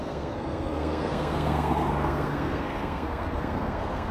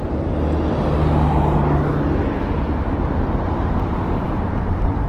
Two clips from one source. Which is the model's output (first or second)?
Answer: first